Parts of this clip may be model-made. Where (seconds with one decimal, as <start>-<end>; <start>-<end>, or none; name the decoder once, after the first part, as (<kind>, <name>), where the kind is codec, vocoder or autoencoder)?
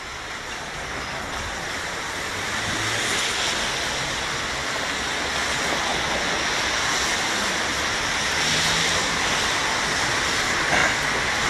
none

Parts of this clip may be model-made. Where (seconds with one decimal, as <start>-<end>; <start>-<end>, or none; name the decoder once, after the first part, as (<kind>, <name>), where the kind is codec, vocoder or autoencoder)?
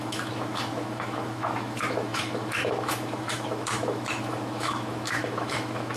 0.0-6.0 (autoencoder, DAC-VAE)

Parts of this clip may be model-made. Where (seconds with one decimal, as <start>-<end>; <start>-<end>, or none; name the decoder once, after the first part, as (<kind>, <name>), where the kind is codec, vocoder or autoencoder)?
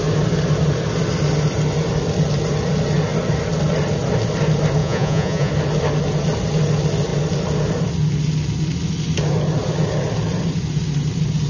4.8-5.5 (vocoder, Vocos)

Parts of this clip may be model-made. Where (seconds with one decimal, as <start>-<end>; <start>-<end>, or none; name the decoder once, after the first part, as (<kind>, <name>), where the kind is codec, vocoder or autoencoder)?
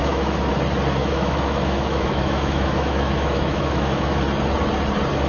0.0-0.5 (autoencoder, DAC-VAE); 1.0-4.2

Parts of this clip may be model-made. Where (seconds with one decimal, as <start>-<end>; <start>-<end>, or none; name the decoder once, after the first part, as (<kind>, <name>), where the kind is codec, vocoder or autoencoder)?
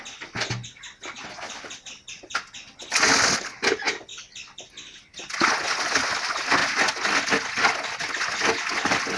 none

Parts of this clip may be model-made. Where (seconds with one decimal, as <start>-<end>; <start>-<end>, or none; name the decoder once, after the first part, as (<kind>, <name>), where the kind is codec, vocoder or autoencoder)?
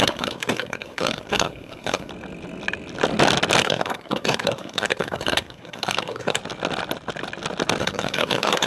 0.0-2.1 (codec, SNAC); 3.6-6.4; 7.8-8.7